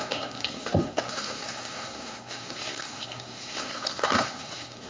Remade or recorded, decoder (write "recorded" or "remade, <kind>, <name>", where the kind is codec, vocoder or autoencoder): remade, codec, SNAC